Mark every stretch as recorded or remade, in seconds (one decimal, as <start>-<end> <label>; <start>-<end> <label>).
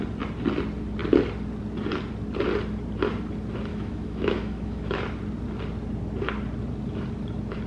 0.0-3.7 recorded; 3.7-5.0 remade; 5.0-7.7 recorded